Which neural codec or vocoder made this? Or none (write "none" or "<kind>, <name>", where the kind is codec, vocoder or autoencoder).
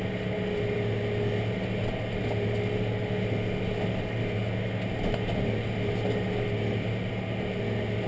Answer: none